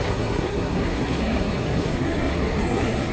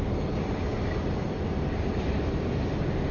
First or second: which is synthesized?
first